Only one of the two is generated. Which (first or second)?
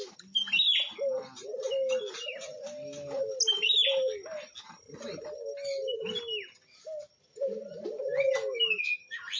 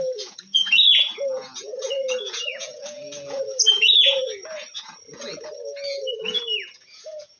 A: second